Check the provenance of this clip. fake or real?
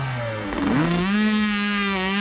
fake